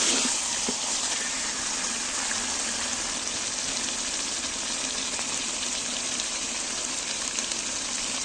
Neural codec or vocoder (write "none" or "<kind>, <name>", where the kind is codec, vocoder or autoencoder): none